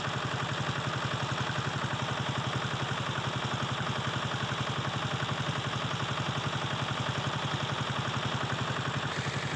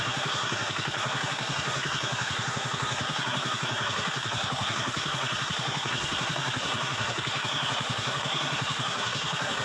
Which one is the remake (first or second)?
second